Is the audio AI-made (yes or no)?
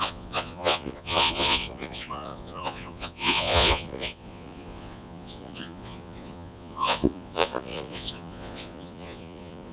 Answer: yes